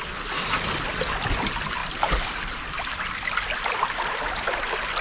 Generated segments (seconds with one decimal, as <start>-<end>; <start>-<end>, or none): none